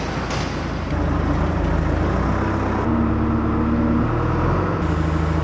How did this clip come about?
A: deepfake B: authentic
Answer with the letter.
B